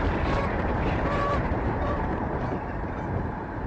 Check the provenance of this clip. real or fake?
fake